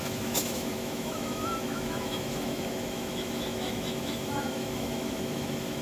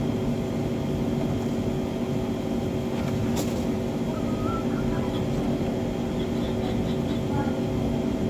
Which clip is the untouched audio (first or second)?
second